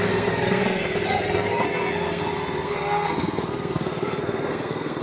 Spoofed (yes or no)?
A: yes